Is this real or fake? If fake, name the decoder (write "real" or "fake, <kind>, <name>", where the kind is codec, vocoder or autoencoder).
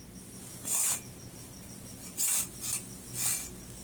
real